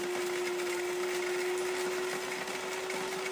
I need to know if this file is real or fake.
real